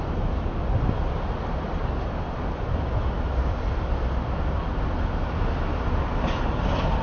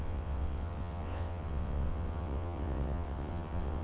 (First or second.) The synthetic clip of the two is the second